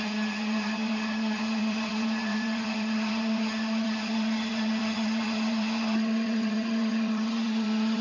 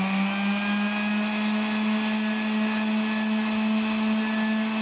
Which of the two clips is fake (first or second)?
first